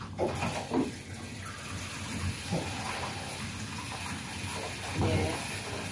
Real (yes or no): yes